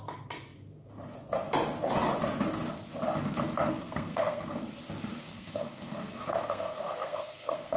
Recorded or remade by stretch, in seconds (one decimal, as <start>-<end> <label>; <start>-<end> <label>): 0.0-3.7 recorded; 3.7-4.4 remade; 4.4-5.2 recorded; 5.2-7.8 remade